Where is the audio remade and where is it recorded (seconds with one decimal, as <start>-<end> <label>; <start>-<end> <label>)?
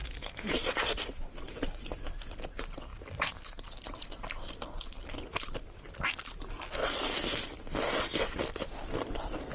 0.0-2.9 recorded; 2.9-4.3 remade; 4.3-6.8 recorded; 6.8-8.0 remade; 8.0-9.5 recorded